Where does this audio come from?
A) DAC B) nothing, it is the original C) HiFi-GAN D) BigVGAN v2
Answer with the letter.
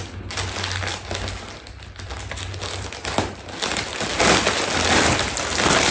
B